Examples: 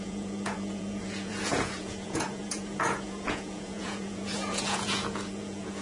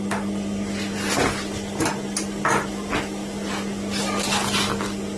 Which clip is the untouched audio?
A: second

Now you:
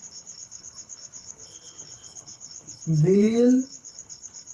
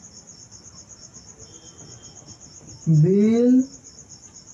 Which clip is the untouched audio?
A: second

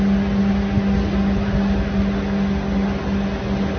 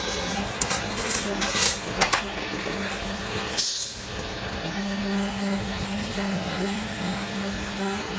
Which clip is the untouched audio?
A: first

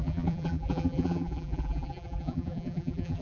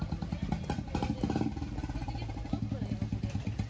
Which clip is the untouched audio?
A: second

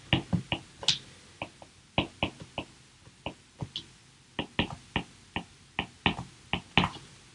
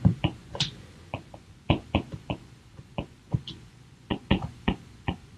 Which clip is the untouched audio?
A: first